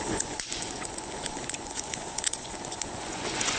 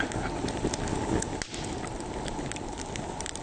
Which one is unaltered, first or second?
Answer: second